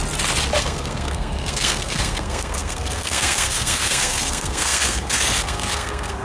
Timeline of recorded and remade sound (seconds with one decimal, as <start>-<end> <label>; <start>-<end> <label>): 0.0-0.6 recorded; 0.6-6.2 remade